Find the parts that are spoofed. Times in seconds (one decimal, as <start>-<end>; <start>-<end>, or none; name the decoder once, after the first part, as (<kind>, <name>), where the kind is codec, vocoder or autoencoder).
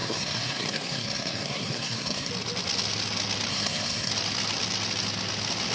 0.0-2.3 (codec, SNAC); 3.5-4.1